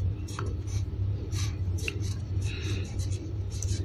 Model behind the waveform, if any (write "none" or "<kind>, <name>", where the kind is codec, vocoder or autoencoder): vocoder, BigVGAN v2